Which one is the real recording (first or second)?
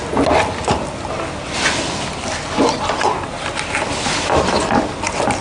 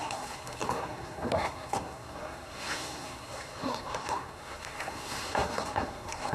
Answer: first